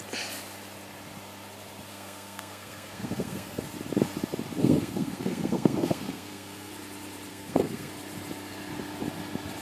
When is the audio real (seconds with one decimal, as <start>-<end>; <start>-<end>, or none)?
0.0-1.9; 3.6-4.6; 6.7-7.3; 7.9-9.6